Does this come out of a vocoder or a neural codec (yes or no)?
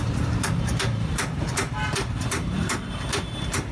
yes